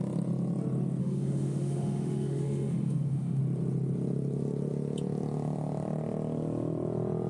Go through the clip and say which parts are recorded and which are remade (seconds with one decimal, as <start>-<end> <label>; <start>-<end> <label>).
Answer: 0.0-1.0 recorded; 1.0-3.4 remade; 3.4-7.3 recorded